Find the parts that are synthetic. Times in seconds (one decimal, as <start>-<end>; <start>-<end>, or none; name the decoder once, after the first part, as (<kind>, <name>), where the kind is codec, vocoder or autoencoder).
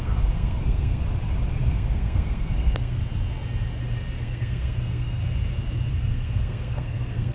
0.0-1.0 (codec, SNAC); 1.7-3.0; 4.2-5.2; 5.9-7.3